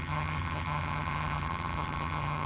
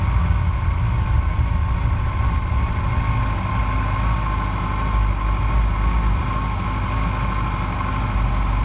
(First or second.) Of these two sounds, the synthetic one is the first